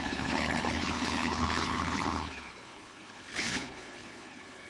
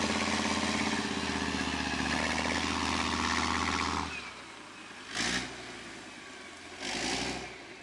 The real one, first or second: second